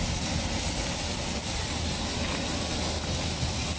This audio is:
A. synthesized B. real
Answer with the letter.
B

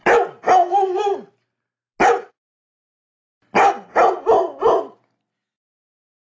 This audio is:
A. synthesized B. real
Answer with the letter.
B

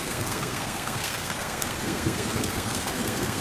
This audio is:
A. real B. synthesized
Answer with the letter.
B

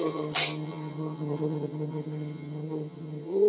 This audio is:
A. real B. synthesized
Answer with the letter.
B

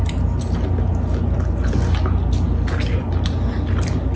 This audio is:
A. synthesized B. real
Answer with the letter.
B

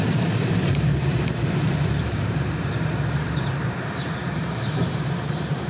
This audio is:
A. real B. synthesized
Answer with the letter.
B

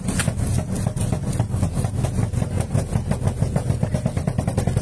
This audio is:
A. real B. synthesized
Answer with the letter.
A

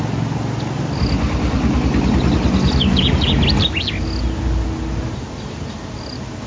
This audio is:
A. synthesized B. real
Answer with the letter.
B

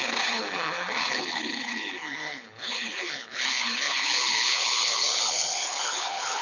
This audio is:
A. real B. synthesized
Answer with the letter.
B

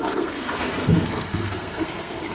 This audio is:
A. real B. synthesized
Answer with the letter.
B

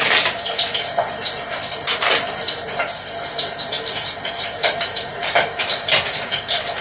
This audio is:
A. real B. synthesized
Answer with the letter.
B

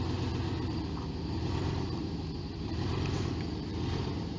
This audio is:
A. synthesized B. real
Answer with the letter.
A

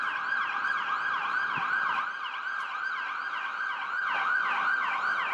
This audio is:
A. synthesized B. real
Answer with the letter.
B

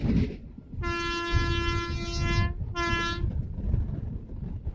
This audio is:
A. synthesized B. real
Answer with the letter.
B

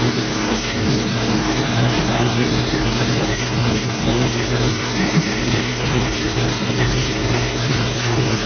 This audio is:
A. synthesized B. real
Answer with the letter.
A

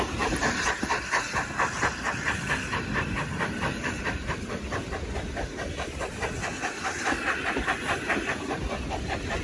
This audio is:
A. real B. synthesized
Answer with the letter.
A